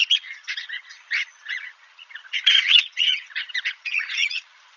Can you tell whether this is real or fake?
fake